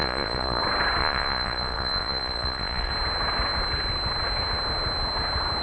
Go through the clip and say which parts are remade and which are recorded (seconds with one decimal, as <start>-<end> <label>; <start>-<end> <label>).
0.0-0.6 remade; 0.6-1.0 recorded; 1.0-2.9 remade; 2.9-5.6 recorded